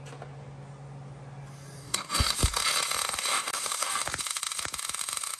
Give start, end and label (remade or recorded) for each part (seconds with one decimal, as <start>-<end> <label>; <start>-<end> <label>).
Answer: 0.0-1.8 recorded; 1.8-2.4 remade; 2.4-3.3 recorded; 3.3-4.0 remade; 4.0-5.4 recorded